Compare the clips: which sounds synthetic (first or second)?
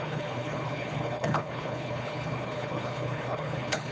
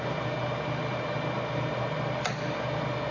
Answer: first